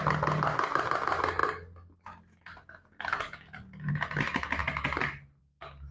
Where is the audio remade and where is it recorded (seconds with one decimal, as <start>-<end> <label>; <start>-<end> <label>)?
0.0-5.9 recorded